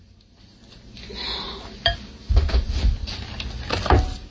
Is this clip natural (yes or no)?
yes